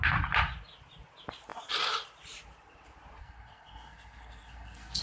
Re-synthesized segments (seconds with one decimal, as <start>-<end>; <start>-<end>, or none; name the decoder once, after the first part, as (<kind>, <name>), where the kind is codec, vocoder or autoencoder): 3.2-5.0 (codec, SNAC)